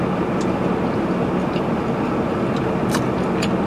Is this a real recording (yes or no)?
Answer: yes